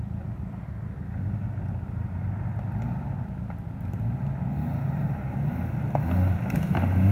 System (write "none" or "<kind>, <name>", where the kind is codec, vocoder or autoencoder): none